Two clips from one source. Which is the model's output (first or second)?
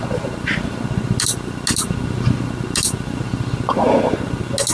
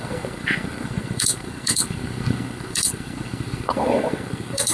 second